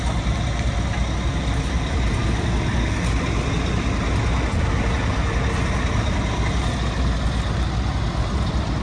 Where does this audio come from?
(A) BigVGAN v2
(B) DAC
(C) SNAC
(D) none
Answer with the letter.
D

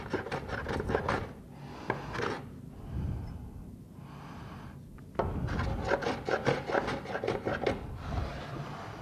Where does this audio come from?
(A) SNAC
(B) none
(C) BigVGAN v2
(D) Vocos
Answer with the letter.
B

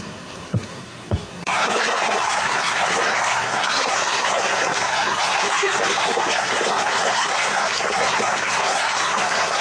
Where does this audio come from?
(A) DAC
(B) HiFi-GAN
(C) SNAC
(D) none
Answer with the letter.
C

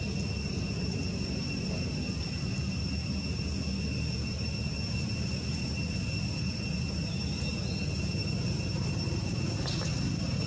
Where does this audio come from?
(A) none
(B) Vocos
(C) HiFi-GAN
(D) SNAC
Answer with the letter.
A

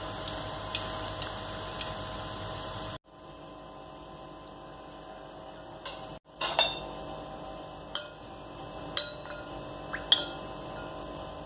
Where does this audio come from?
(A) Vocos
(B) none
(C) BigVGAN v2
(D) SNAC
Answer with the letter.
B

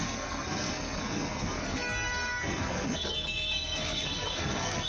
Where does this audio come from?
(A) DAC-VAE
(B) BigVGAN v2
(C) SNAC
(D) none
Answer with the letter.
C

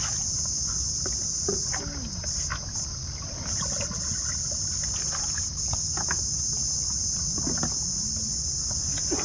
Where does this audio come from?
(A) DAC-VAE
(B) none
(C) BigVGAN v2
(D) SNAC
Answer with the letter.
B